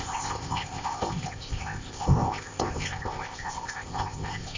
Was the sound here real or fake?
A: fake